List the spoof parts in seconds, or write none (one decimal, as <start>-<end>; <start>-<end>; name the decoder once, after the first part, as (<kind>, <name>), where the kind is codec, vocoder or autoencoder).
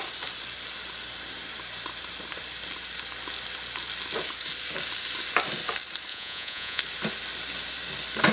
6.1-6.8 (vocoder, Vocos)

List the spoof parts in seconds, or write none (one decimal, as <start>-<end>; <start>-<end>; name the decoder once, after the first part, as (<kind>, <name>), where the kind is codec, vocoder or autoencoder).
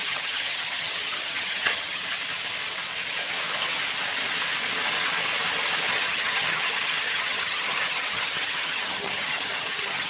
0.0-2.0 (vocoder, HiFi-GAN); 5.9-10.1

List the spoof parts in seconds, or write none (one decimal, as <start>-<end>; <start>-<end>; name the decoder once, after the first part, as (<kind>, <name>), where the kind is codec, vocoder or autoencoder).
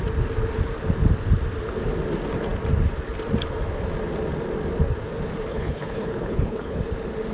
5.5-6.8 (codec, HILCodec)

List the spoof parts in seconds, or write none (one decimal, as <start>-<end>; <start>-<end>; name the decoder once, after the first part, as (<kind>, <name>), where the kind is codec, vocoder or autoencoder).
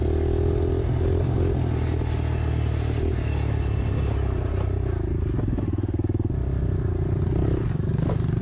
none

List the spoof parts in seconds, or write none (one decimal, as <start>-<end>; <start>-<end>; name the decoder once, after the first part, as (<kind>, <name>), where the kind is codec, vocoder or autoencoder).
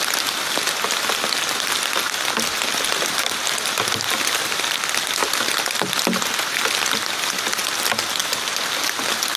5.2-5.9 (vocoder, BigVGAN v2)